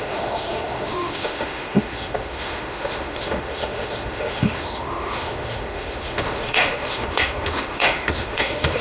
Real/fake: fake